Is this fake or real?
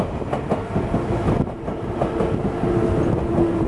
real